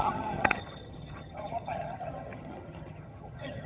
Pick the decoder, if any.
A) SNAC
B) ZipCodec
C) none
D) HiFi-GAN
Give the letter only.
D